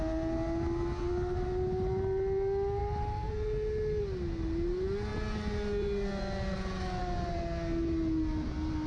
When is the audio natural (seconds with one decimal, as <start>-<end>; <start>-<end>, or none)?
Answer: 0.0-2.8; 3.3-8.9